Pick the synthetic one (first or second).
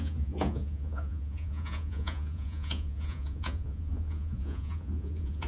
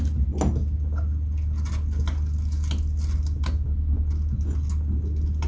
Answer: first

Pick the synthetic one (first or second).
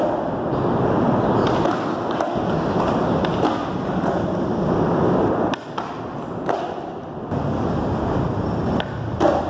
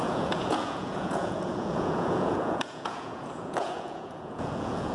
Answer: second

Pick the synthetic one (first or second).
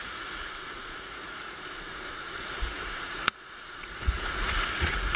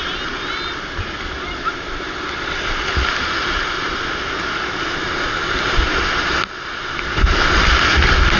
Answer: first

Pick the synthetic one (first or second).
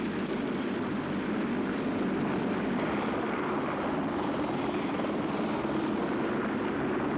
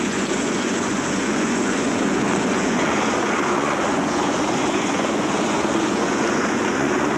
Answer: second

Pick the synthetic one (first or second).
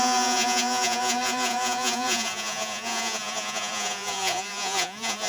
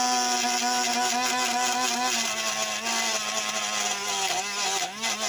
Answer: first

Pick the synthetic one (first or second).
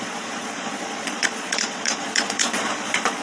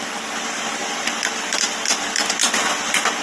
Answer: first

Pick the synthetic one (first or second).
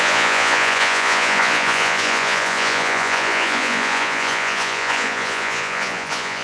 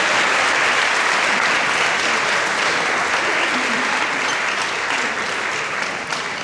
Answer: first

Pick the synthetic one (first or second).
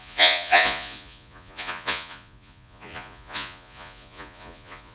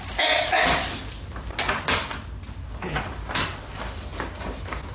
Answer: first